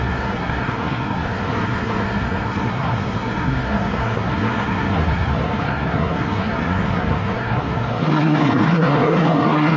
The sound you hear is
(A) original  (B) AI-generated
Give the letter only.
B